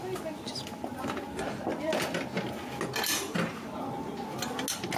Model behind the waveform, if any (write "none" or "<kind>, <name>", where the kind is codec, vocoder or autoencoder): none